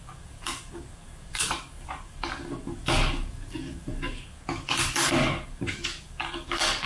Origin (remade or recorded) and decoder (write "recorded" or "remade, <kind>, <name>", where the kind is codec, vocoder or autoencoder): remade, codec, DAC